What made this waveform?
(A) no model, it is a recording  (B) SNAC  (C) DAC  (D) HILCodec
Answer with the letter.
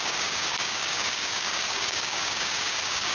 C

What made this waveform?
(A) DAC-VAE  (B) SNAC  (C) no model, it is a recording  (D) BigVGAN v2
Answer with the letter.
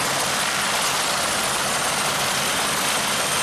C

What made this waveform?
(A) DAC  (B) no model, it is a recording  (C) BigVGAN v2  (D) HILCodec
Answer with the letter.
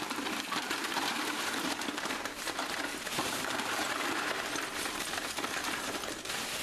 C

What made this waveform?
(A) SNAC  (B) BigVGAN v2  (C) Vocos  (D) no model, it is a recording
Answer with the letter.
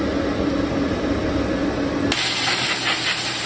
D